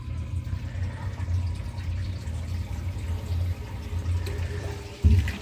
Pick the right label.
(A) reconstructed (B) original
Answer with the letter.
B